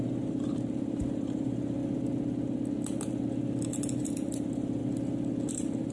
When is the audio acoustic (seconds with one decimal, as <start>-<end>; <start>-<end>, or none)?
1.8-4.0; 4.8-5.5